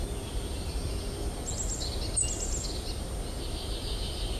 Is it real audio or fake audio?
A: real